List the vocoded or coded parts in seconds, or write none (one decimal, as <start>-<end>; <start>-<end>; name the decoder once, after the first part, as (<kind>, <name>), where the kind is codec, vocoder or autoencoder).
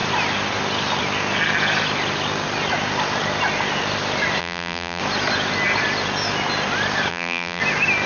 4.4-5.0 (vocoder, BigVGAN v2); 7.1-7.6